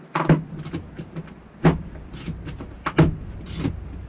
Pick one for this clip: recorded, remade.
recorded